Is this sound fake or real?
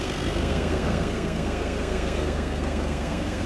fake